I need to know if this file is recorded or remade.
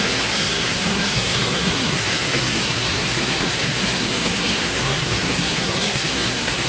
remade